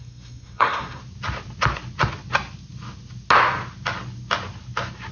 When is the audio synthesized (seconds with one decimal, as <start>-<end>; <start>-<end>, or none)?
0.0-1.0